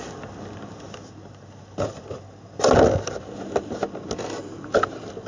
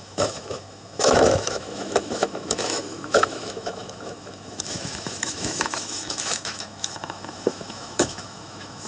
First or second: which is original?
first